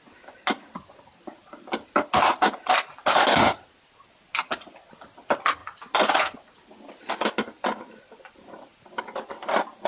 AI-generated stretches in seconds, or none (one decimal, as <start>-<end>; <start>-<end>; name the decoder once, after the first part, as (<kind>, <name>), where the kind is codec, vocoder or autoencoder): none